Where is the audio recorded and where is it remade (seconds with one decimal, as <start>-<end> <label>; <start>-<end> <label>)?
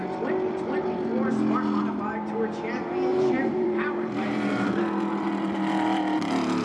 0.0-3.1 recorded; 3.1-4.7 remade; 4.7-6.6 recorded